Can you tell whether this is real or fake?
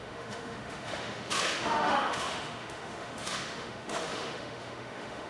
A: fake